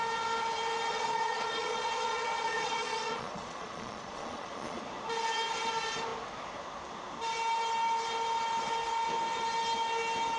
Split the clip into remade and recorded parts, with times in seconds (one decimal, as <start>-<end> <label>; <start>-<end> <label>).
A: 0.0-0.9 recorded; 0.9-4.8 remade; 4.8-10.4 recorded